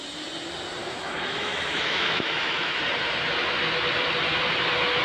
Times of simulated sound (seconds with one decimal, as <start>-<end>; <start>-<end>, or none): 0.8-2.8

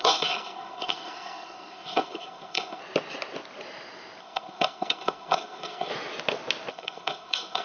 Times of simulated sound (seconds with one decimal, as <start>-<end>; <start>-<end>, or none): 0.0-2.8; 4.2-5.9; 6.7-7.6

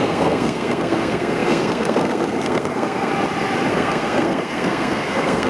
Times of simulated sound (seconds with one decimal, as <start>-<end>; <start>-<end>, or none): 0.0-3.1; 3.7-5.5